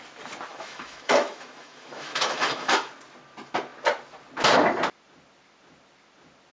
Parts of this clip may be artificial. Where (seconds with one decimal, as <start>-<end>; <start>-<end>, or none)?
0.5-2.9